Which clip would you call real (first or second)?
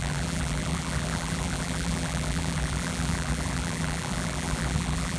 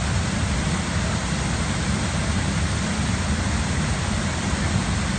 second